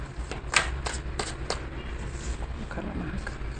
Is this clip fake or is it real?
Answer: real